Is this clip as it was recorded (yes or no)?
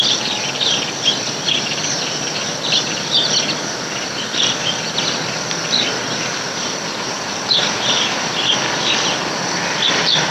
yes